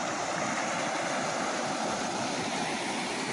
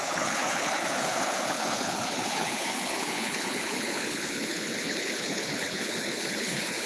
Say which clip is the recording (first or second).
first